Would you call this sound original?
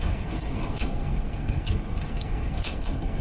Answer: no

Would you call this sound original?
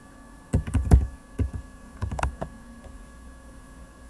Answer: no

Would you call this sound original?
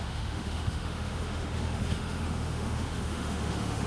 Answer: no